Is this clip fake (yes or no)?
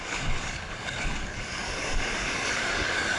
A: yes